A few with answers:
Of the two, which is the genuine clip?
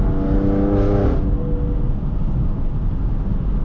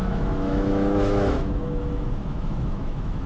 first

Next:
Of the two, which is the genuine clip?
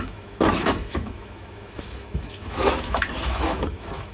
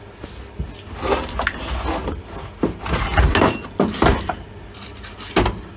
second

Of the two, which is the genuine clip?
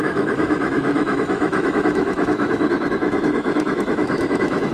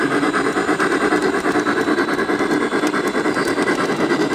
second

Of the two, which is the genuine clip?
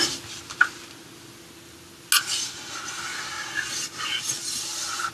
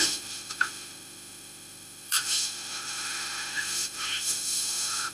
first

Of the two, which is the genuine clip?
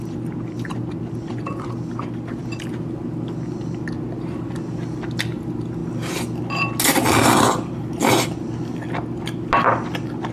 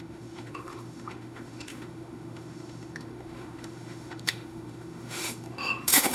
first